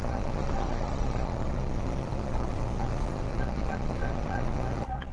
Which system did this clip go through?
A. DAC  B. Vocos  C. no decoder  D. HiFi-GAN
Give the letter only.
B